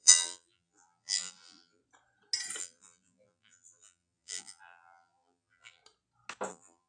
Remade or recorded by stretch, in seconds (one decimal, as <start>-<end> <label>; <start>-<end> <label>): 0.0-1.8 remade; 1.8-2.6 recorded; 2.6-5.8 remade; 5.8-6.5 recorded; 6.5-6.9 remade